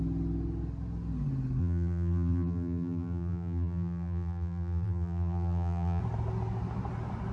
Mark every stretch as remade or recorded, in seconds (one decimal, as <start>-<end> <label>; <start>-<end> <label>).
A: 0.0-1.6 recorded; 1.6-6.0 remade; 6.0-7.3 recorded